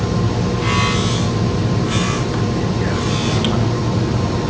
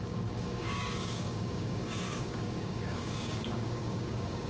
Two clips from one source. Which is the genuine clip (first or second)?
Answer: first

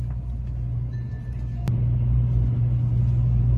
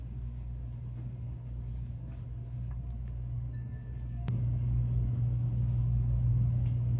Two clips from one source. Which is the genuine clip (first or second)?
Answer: first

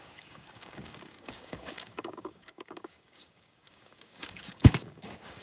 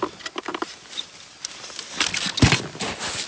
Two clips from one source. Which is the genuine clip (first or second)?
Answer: second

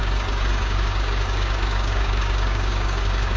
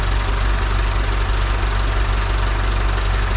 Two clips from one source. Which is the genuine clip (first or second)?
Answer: second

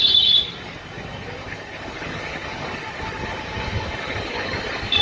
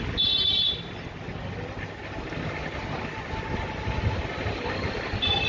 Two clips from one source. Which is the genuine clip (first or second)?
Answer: second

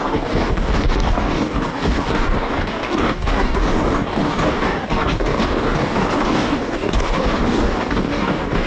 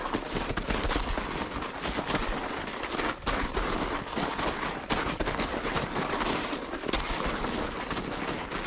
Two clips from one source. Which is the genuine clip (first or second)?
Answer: second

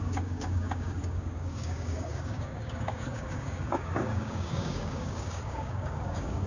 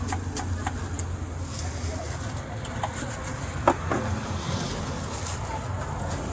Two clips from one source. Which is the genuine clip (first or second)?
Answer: second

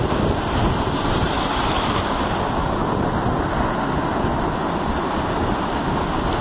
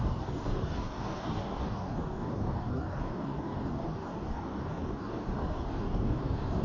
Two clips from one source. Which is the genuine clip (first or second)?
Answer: first